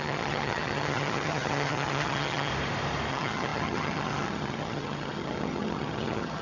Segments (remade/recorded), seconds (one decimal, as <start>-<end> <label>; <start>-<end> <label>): 0.0-2.5 remade; 2.5-3.1 recorded; 3.1-6.4 remade